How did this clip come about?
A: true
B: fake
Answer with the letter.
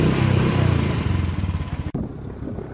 B